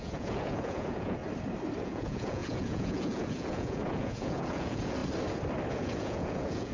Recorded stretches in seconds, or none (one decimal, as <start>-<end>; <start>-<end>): 1.2-1.8; 5.0-5.7